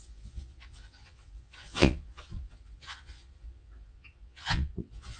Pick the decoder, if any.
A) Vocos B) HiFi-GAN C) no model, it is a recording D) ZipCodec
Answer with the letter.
A